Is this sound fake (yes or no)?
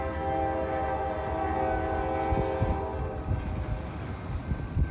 no